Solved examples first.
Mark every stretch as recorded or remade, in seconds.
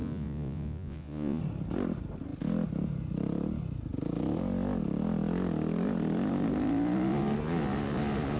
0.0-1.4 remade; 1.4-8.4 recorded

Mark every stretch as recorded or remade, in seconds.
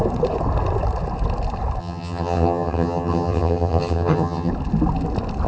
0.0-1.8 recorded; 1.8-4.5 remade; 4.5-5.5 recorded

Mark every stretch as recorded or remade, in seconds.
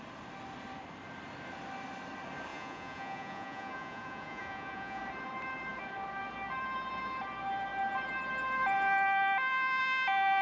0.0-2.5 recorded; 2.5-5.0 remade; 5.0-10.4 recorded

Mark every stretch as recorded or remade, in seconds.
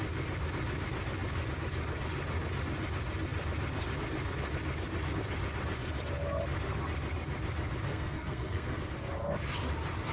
0.0-7.9 recorded; 7.9-8.7 remade; 8.7-10.1 recorded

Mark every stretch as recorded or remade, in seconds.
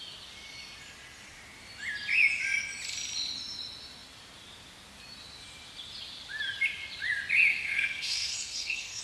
0.0-7.5 recorded; 7.5-9.0 remade